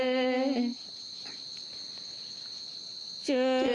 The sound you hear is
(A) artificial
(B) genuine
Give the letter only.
B